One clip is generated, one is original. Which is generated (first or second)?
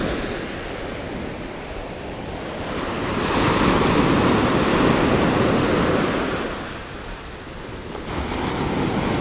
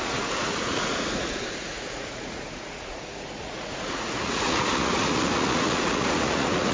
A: second